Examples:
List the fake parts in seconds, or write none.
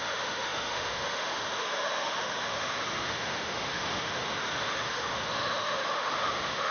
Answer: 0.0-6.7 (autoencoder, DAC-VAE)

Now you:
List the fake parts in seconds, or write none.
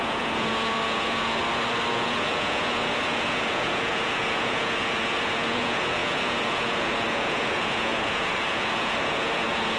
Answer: 0.0-1.4 (vocoder, Vocos); 1.9-9.8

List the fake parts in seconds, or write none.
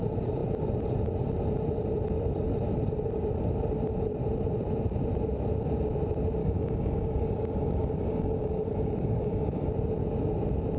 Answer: 6.4-9.7 (codec, DAC)